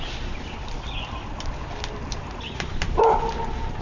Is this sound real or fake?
real